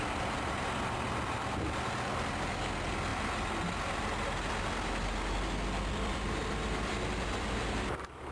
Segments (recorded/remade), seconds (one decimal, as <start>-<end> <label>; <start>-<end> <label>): 0.0-5.9 recorded; 5.9-8.3 remade